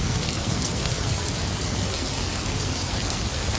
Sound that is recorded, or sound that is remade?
remade